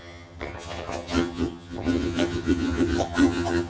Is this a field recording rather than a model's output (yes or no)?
no